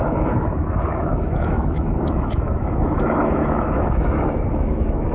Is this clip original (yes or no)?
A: no